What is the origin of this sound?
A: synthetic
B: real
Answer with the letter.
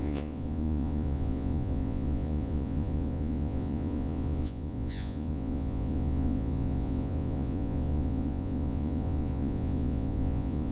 A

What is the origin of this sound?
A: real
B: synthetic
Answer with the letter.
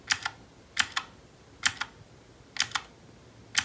A